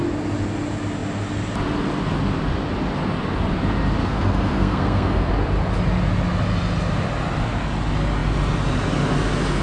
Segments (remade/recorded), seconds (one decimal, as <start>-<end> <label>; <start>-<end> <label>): 0.0-4.0 recorded; 4.0-5.3 remade; 5.3-9.6 recorded